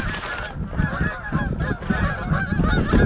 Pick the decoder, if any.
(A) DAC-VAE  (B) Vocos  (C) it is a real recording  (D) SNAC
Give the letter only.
C